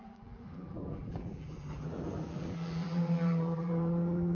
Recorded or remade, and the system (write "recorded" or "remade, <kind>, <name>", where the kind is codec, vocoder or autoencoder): remade, vocoder, BigVGAN v2